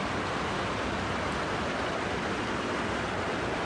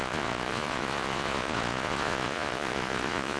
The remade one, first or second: second